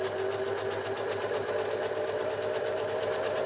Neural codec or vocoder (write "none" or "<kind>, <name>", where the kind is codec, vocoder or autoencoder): none